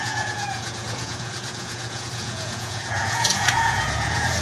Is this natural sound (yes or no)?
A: no